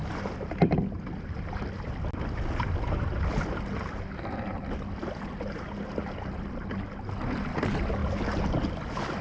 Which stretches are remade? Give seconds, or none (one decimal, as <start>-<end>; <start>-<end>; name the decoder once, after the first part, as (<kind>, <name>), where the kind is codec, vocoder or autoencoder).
none